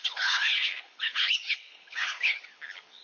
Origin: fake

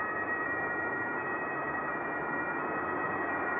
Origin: real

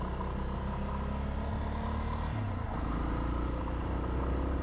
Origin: real